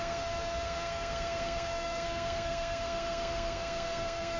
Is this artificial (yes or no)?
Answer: yes